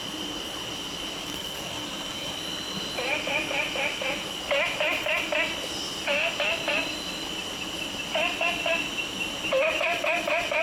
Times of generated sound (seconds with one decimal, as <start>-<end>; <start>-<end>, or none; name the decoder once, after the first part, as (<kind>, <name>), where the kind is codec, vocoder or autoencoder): 1.2-2.3 (codec, SNAC)